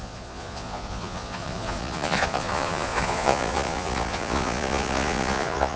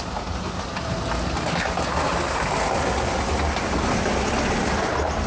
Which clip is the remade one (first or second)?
first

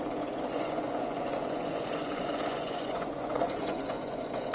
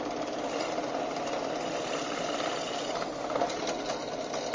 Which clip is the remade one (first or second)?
first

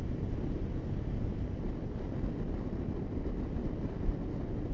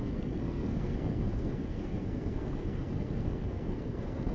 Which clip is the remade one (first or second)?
second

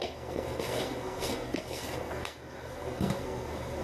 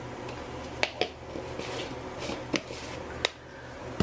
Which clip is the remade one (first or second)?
first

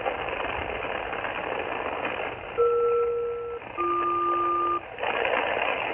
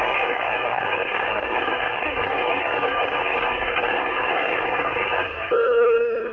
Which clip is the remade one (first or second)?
second